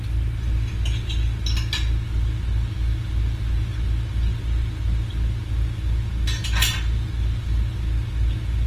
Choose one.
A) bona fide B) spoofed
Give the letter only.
A